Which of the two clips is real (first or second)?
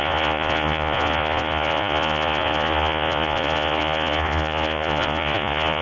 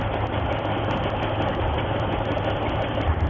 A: second